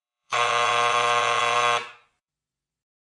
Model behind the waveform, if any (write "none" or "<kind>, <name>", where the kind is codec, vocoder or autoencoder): vocoder, Vocos